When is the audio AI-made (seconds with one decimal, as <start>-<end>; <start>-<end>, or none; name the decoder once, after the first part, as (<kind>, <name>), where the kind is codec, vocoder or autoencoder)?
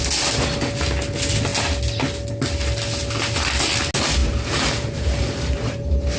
4.2-6.2 (vocoder, BigVGAN v2)